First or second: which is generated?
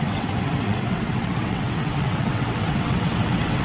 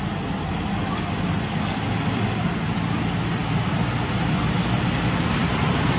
first